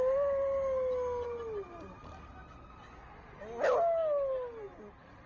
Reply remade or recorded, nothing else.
recorded